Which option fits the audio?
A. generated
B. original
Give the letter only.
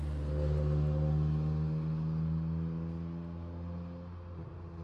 B